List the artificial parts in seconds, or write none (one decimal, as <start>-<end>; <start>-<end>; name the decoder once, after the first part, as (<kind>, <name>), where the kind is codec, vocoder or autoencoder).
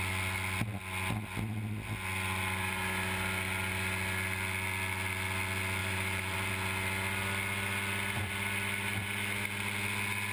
5.8-6.5 (vocoder, BigVGAN v2)